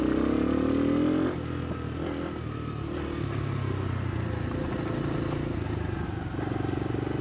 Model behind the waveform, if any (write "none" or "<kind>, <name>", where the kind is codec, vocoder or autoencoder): none